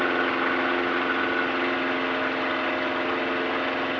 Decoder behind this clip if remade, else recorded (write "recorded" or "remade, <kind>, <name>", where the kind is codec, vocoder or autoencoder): recorded